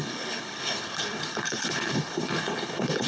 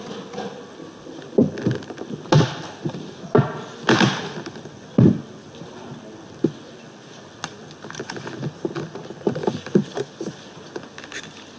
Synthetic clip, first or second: first